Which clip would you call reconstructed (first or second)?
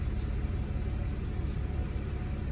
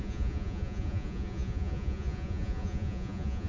second